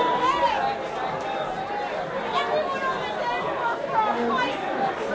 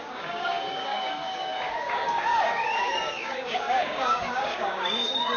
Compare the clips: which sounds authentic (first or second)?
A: first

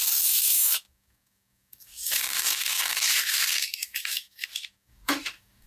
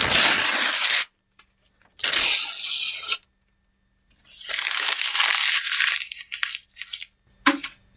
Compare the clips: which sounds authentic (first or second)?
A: second